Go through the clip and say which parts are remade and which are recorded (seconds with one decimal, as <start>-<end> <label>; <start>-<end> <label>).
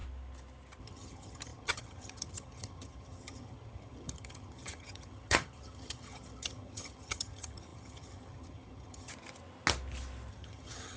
0.0-0.8 recorded; 0.8-9.1 remade; 9.1-10.3 recorded; 10.3-11.0 remade